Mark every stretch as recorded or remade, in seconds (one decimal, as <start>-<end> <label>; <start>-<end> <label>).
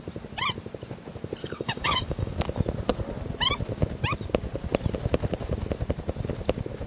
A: 0.0-1.4 recorded; 1.4-2.3 remade; 2.3-6.9 recorded